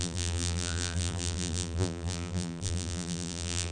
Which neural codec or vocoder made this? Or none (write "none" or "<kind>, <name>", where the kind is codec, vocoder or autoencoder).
vocoder, BigVGAN v2